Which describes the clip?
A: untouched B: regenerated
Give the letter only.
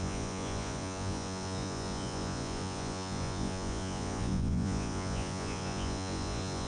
B